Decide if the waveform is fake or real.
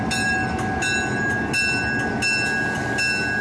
real